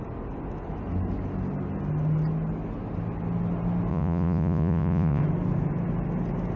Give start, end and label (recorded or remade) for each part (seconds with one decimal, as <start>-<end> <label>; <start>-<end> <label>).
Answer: 0.0-3.9 recorded; 3.9-5.2 remade; 5.2-6.6 recorded